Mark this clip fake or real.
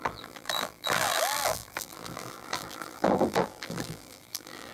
fake